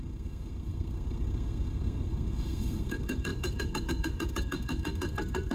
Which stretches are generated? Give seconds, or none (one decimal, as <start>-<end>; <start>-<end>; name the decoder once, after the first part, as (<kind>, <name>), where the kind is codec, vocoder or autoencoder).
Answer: 0.0-5.5 (codec, SNAC)